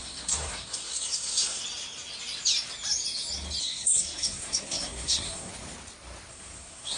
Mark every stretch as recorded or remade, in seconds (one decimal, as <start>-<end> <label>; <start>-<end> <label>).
0.0-1.6 remade; 1.6-3.6 recorded; 3.6-5.5 remade; 5.5-6.3 recorded; 6.3-7.0 remade